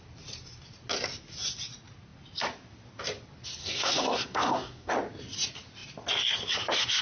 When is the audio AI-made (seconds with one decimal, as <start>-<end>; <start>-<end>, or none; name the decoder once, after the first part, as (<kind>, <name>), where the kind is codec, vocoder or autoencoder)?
3.6-4.9 (codec, SNAC)